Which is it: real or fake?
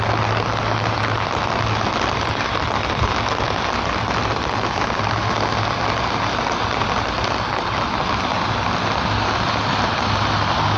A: real